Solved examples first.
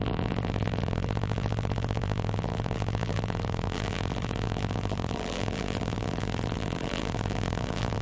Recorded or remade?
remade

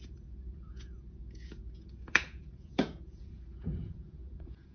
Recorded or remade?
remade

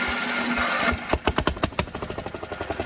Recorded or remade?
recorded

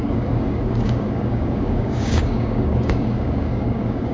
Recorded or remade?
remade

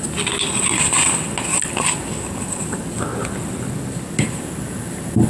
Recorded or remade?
recorded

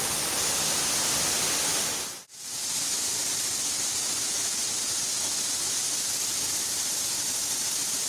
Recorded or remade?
recorded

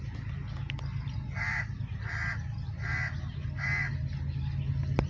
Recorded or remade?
recorded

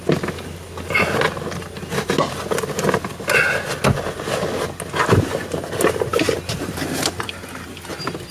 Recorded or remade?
recorded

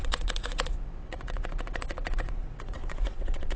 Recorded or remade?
remade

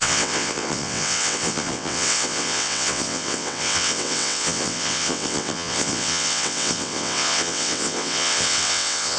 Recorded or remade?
remade